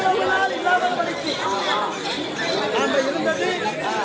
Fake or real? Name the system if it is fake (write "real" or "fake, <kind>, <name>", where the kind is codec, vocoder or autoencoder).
real